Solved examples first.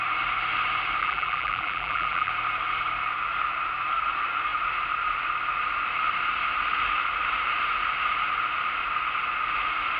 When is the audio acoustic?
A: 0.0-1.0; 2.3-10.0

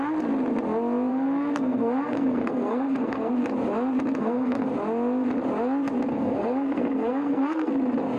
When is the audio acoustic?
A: 0.0-1.1; 3.3-4.2; 4.7-6.1; 7.7-8.2

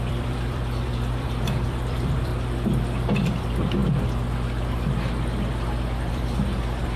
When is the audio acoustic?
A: 2.3-3.4; 3.8-6.1

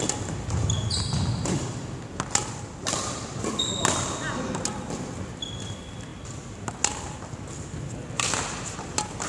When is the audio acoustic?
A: 0.0-9.3

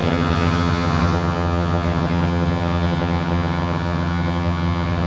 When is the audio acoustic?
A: none

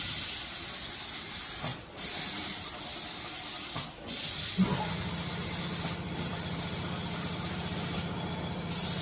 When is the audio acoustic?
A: 0.0-9.0

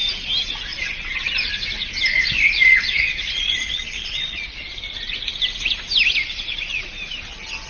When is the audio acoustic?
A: 0.0-0.7; 1.3-2.6; 4.8-7.7